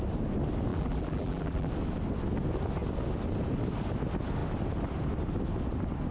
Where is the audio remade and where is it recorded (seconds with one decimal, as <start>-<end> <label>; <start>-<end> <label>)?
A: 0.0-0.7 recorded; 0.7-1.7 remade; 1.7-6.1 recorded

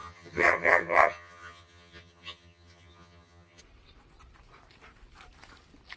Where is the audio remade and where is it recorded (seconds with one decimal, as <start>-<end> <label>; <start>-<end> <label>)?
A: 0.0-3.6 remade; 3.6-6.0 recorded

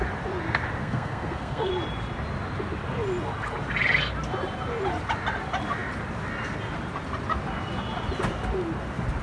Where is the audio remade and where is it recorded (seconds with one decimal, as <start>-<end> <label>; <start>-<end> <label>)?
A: 0.0-0.8 recorded; 0.8-1.7 remade; 1.7-9.2 recorded

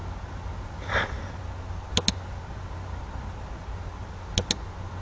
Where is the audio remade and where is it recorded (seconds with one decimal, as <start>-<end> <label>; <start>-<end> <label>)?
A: 0.0-5.0 recorded

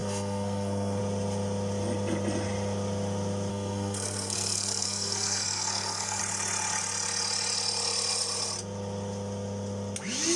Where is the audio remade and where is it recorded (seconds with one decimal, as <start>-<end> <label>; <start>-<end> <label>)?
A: 0.0-1.0 remade; 1.0-3.5 recorded; 3.5-6.2 remade; 6.2-10.4 recorded